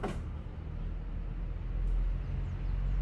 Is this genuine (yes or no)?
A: yes